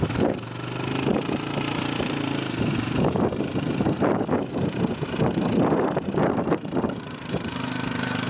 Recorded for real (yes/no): no